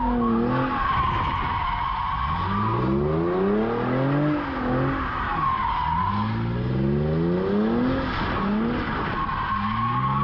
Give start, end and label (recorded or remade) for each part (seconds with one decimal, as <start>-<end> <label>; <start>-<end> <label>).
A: 0.0-10.2 recorded